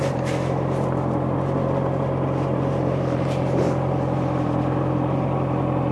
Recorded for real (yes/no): yes